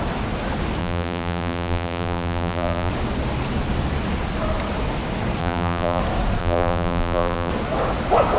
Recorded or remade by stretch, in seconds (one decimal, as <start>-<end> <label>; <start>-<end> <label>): 0.0-0.8 recorded; 0.8-2.9 remade; 2.9-5.4 recorded; 5.4-6.0 remade; 6.0-6.4 recorded; 6.4-7.5 remade; 7.5-8.4 recorded